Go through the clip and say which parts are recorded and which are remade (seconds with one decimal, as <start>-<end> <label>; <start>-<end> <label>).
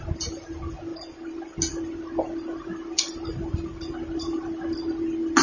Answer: 0.0-5.4 recorded